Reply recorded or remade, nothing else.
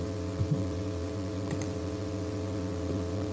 remade